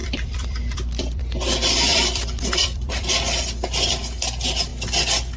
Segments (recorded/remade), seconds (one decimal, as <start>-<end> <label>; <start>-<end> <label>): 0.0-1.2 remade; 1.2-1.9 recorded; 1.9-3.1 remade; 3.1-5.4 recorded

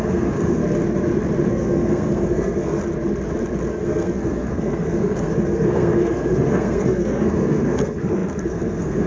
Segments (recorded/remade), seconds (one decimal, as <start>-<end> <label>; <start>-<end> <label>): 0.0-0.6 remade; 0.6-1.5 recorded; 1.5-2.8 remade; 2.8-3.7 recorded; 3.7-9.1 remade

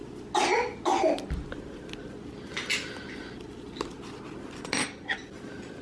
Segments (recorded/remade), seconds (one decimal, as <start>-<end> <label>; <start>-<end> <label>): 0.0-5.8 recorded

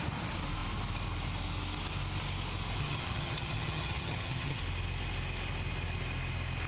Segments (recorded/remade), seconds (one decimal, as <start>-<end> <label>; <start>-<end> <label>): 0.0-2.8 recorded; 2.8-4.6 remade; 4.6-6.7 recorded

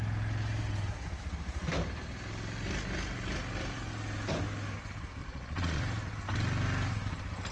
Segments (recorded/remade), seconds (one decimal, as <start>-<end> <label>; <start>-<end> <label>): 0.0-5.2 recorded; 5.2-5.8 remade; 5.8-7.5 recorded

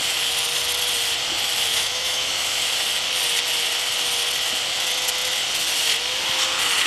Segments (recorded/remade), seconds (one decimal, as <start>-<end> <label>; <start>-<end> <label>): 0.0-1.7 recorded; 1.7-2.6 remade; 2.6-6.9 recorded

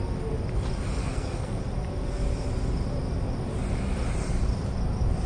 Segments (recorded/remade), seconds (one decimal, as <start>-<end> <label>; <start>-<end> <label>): 0.0-1.0 recorded; 1.0-1.6 remade; 1.6-5.3 recorded

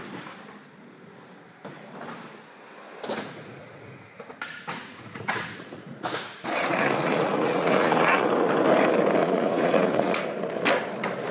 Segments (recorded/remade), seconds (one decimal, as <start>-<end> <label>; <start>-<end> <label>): 0.0-3.1 recorded; 3.1-8.3 remade; 8.3-9.2 recorded; 9.2-10.2 remade; 10.2-11.3 recorded